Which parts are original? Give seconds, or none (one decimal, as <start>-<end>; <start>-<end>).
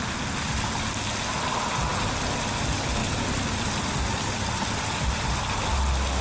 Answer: 0.0-6.2